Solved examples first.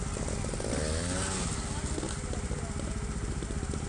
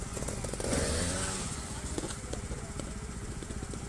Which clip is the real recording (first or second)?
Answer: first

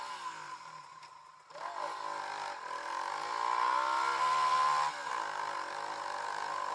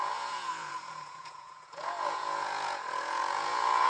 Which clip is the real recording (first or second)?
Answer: first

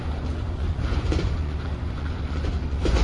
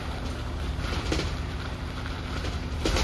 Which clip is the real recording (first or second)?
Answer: second